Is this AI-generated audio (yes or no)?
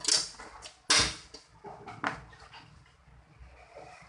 no